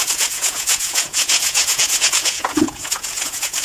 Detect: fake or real fake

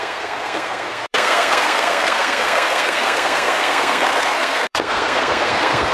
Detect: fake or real fake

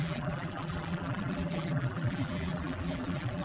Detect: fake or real fake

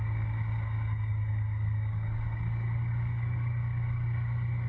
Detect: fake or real fake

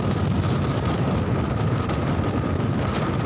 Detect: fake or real real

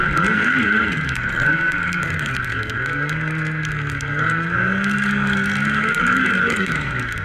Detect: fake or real fake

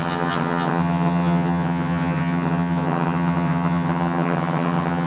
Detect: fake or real fake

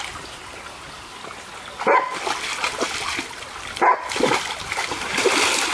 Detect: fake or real real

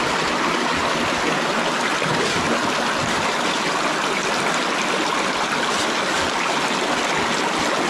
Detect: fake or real real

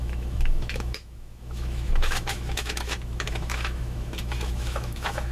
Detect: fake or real fake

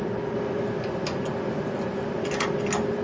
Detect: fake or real real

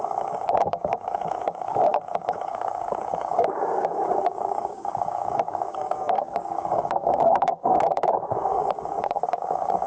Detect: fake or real fake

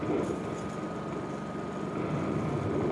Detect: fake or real real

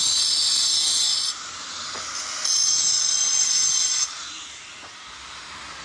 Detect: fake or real real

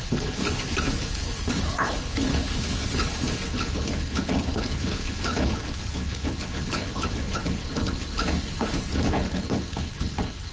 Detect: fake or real fake